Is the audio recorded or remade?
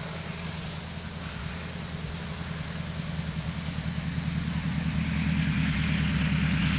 recorded